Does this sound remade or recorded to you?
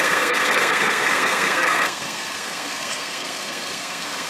remade